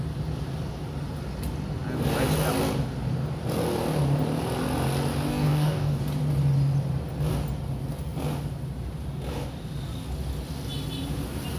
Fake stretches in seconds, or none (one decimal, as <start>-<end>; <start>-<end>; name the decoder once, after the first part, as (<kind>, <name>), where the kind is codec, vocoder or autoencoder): 5.3-6.0 (codec, DAC)